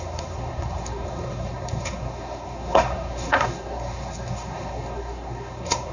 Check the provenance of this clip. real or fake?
fake